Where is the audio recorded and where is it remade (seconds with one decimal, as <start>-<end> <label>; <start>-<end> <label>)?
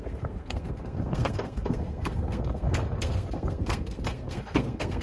0.0-5.0 remade